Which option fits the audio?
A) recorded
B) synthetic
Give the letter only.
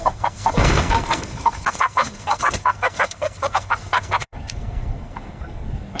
B